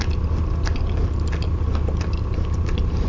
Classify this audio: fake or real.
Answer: real